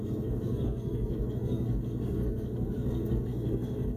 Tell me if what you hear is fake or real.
fake